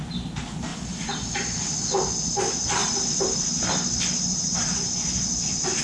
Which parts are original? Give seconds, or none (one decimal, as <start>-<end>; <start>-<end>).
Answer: 0.0-5.8